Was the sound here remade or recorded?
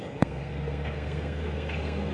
remade